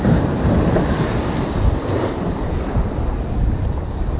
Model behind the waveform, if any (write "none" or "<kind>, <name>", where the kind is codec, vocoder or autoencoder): none